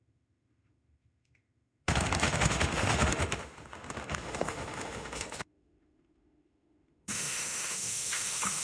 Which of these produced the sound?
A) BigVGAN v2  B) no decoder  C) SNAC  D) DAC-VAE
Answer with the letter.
D